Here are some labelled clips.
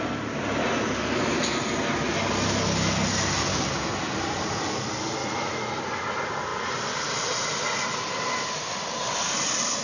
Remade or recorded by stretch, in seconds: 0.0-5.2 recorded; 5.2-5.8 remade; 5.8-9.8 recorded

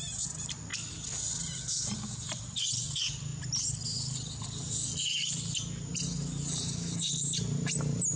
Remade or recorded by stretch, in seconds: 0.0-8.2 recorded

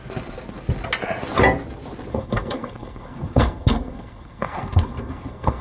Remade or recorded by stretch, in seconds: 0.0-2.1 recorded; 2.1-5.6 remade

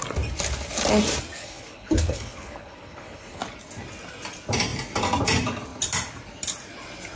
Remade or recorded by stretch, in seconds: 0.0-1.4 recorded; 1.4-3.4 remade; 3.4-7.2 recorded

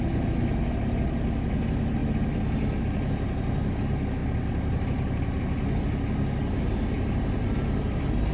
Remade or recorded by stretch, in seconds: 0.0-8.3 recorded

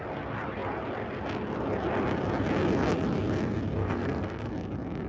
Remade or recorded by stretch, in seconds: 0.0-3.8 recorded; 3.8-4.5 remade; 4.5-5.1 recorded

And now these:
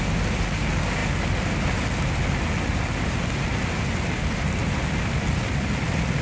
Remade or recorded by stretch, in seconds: 0.0-6.2 recorded

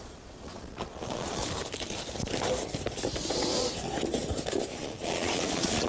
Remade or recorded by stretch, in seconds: 0.0-1.4 remade; 1.4-4.7 recorded; 4.7-5.9 remade